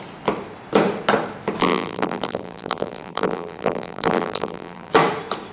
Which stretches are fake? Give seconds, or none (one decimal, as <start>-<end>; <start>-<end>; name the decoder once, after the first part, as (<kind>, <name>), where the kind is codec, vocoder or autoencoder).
1.6-4.9 (vocoder, BigVGAN v2)